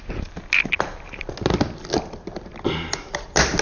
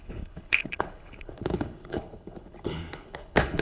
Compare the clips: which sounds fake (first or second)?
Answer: second